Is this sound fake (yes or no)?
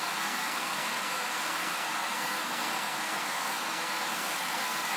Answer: yes